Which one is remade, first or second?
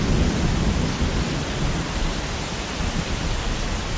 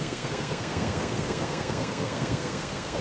second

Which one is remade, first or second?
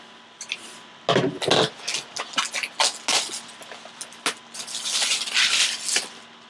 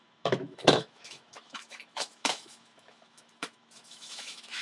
second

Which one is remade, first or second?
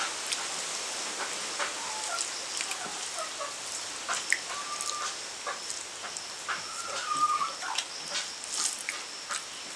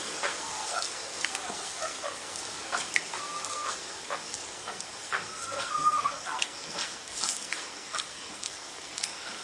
second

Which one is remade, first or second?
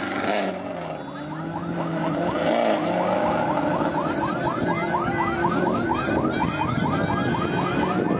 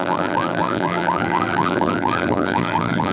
second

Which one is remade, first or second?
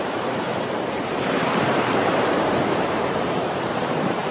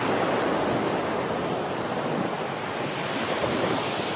first